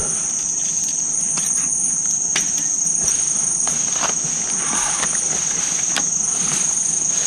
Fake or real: real